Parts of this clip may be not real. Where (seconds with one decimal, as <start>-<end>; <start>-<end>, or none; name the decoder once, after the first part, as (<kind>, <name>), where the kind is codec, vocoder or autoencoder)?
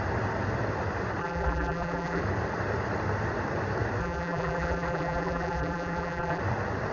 1.2-2.2 (vocoder, BigVGAN v2); 4.0-6.4